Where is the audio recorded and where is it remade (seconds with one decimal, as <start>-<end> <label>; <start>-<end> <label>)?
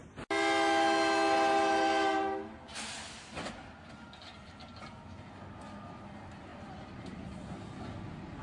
0.0-8.4 recorded